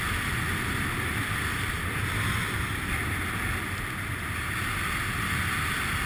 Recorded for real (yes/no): yes